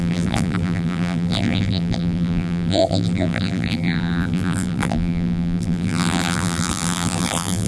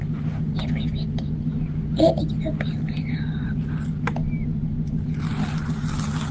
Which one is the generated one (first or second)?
first